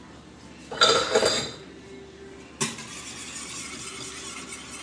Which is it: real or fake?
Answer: real